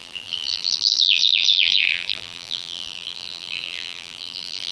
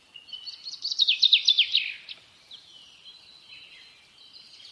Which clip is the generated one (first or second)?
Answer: first